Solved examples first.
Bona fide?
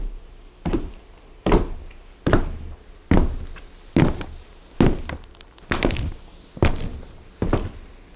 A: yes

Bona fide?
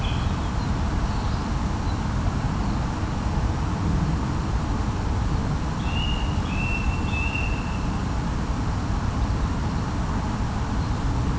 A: yes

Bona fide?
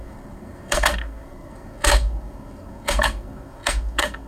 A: no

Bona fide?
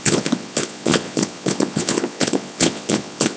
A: no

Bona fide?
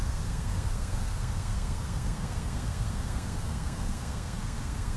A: no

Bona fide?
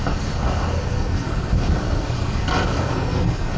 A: no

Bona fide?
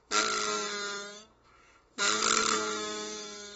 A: no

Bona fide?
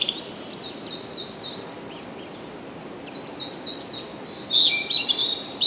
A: yes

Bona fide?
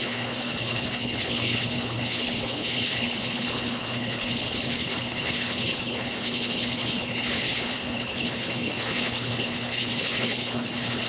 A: no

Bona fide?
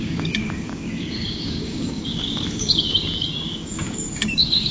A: no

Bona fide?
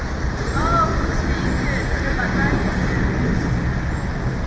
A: yes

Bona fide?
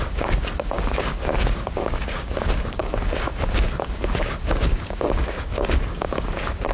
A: no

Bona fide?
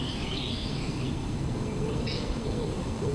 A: no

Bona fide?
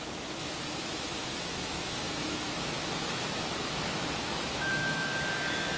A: no